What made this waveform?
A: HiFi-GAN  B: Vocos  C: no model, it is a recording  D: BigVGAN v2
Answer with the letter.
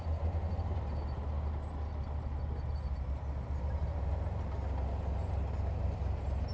C